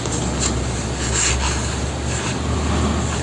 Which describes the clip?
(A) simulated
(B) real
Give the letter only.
B